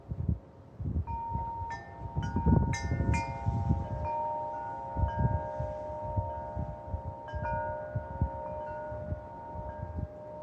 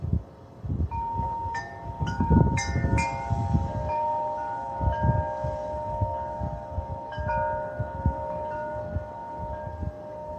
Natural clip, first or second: first